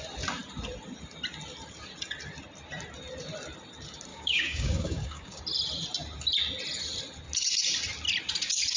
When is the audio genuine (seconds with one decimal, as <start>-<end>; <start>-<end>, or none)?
0.0-4.1; 5.4-8.8